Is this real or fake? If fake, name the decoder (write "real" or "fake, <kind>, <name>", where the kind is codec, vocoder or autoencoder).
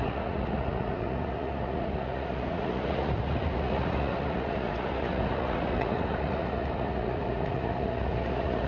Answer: fake, vocoder, Vocos